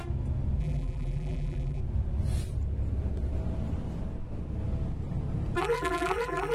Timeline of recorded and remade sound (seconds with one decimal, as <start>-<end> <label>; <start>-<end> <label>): 0.0-0.6 recorded; 0.6-1.8 remade; 1.8-5.6 recorded; 5.6-6.5 remade